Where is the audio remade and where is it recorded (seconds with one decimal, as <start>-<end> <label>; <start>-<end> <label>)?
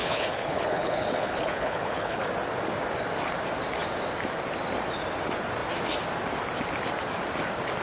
0.0-2.2 remade; 2.2-7.8 recorded